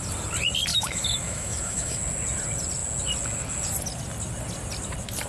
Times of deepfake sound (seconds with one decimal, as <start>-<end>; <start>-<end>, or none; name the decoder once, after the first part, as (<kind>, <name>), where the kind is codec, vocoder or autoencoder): 0.7-2.0 (autoencoder, DAC-VAE)